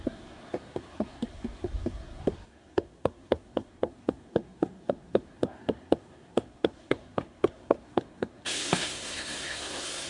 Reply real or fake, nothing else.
fake